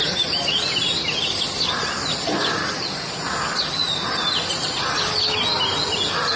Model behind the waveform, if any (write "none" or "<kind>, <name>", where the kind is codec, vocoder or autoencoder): none